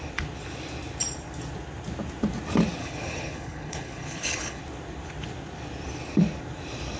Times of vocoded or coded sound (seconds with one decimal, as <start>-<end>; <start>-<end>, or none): 2.8-4.6